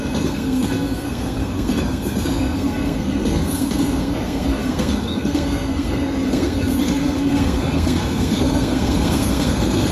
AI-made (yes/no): yes